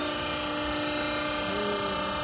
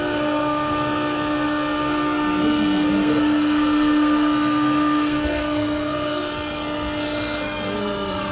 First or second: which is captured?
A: first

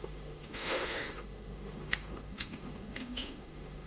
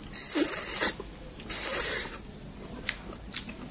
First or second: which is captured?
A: second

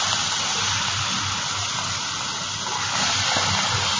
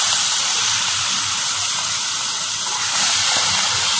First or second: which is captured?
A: first